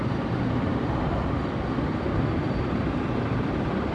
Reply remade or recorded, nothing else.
remade